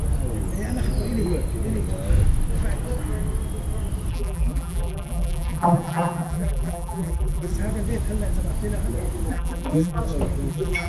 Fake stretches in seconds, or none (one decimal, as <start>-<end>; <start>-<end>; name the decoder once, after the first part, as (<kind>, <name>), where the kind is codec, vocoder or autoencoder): 4.1-7.5 (vocoder, BigVGAN v2); 9.3-10.0; 10.5-10.9